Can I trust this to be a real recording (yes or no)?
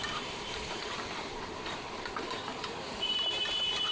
no